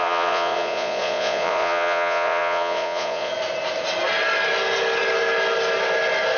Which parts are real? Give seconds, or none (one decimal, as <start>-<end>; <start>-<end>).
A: 3.3-6.4